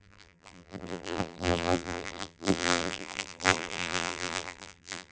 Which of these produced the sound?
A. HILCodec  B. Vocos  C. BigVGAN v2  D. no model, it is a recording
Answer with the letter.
C